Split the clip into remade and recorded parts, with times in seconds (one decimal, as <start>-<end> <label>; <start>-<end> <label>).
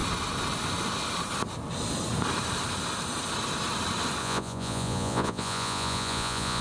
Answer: 0.0-4.2 recorded; 4.2-6.6 remade